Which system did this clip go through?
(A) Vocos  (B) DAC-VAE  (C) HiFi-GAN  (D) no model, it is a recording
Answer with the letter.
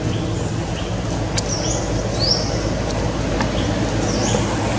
D